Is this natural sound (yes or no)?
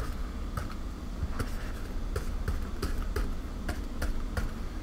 yes